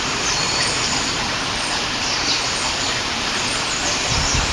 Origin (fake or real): fake